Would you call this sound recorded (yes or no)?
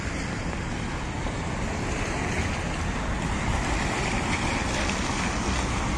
yes